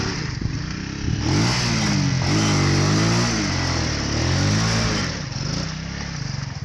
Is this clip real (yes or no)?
yes